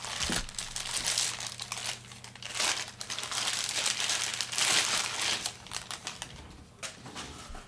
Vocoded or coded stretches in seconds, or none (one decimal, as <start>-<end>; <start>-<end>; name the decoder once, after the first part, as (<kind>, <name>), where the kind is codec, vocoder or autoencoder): none